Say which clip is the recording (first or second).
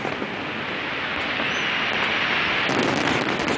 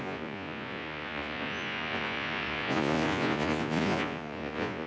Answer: first